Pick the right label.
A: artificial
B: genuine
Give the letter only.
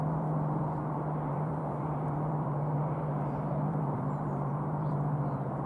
A